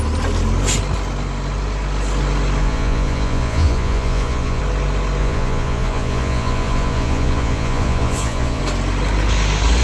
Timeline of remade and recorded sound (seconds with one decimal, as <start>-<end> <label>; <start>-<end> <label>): 0.0-2.6 recorded; 2.6-4.6 remade; 4.6-5.2 recorded; 5.2-8.6 remade; 8.6-9.8 recorded